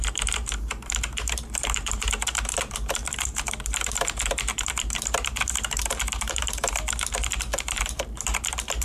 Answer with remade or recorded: remade